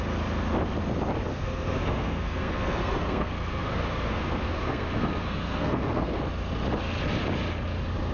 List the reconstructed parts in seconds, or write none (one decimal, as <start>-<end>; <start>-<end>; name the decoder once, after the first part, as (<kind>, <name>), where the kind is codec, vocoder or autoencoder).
1.3-6.2 (codec, SNAC)